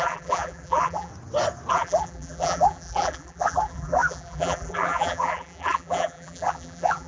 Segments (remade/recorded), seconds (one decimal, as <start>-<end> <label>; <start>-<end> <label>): 0.0-1.1 remade; 1.1-1.7 recorded; 1.7-7.1 remade